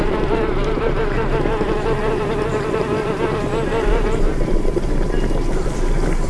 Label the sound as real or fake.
fake